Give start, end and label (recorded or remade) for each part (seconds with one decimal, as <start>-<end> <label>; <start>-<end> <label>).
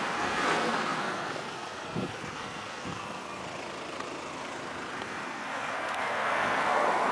0.0-3.4 remade; 3.4-5.0 recorded; 5.0-7.1 remade